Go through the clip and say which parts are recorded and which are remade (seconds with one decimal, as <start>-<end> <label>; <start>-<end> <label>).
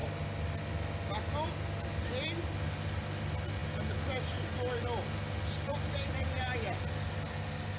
0.0-7.8 recorded